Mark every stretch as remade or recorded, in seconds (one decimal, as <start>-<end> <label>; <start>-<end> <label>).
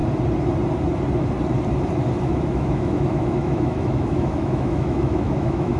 0.0-2.2 recorded; 2.2-5.8 remade